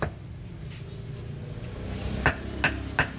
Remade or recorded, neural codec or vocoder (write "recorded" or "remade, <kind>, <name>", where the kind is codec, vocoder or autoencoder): recorded